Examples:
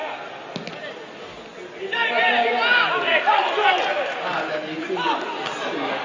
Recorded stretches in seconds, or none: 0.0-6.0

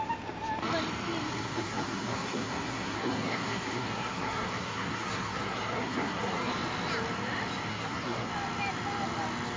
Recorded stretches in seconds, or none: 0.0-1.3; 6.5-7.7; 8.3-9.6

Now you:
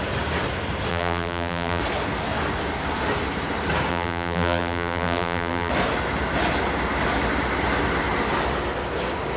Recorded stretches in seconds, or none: 0.0-0.9; 1.8-3.9; 5.7-9.4

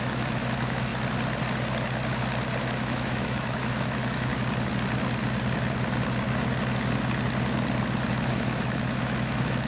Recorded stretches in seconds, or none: 0.9-2.6; 4.3-8.1

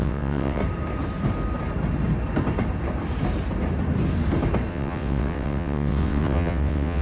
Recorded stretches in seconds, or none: 0.6-4.7